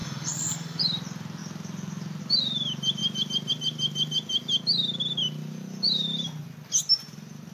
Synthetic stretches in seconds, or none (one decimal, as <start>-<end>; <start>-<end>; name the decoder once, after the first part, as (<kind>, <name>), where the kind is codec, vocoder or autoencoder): 0.0-0.8 (codec, SNAC)